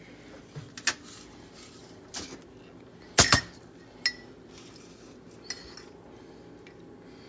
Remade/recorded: recorded